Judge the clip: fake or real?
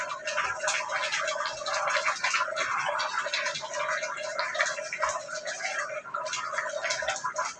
real